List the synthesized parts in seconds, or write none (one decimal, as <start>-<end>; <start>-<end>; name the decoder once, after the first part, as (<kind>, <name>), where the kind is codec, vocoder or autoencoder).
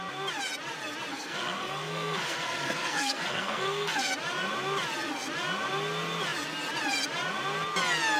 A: 1.1-4.1 (codec, SNAC)